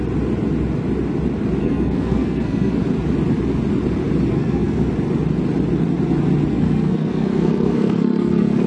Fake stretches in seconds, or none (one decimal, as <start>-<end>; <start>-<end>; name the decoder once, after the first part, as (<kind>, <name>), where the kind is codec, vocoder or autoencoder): 1.6-2.8 (codec, SNAC); 4.3-4.9; 6.5-8.7